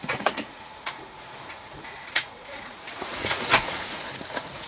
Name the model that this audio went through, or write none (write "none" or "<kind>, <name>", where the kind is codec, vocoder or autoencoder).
vocoder, Vocos